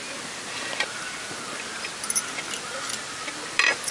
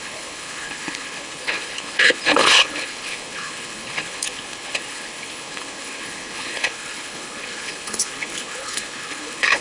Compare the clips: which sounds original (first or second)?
first